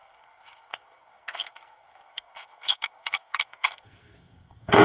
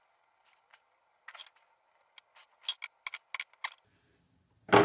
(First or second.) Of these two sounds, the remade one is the first